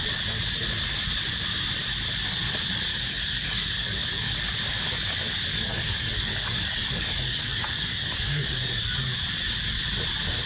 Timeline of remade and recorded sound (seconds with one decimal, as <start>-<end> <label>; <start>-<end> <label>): 0.0-2.9 recorded; 2.9-4.3 remade; 4.3-5.5 recorded; 5.5-9.2 remade; 9.2-10.5 recorded